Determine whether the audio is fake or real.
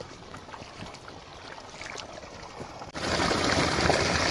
real